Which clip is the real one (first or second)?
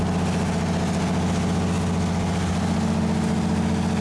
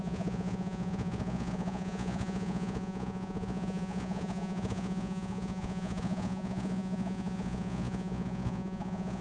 first